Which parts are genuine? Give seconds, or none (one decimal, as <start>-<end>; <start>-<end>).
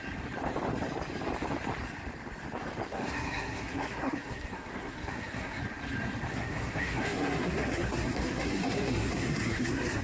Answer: 0.0-2.9; 5.6-6.3